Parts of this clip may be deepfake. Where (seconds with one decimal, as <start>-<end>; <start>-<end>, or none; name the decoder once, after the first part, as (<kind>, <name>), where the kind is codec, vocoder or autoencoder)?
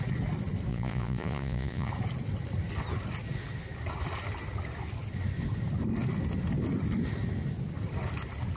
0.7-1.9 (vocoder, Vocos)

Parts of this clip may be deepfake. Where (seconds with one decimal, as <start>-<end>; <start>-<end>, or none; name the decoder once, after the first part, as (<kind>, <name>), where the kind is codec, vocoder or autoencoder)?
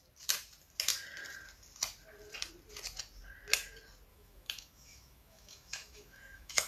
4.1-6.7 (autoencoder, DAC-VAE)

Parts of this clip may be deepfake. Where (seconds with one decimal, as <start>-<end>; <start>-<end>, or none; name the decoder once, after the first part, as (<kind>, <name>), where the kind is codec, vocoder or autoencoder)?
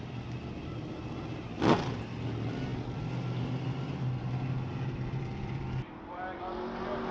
none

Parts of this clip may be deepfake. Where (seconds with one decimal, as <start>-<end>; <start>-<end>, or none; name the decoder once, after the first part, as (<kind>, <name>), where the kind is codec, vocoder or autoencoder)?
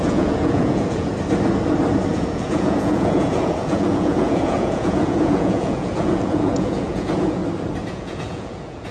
0.0-1.1 (vocoder, Vocos); 2.1-7.4; 7.9-8.9